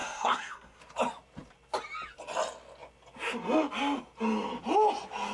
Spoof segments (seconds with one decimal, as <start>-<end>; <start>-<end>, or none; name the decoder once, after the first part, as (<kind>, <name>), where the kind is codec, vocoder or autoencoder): 0.0-0.8 (codec, SNAC)